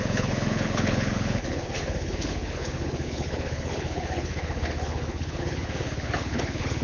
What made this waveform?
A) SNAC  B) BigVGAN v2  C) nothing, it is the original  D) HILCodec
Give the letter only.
D